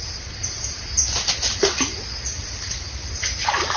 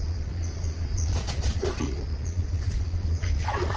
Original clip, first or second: first